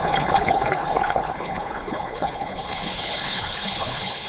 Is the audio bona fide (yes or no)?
no